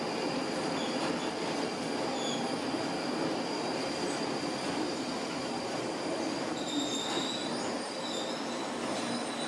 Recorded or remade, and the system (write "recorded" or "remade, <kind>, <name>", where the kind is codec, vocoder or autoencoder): recorded